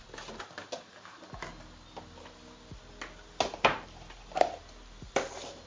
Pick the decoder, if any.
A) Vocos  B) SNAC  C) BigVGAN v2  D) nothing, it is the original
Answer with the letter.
D